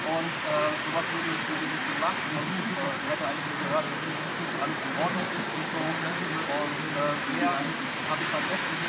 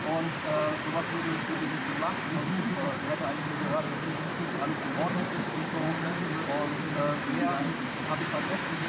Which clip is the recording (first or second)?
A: first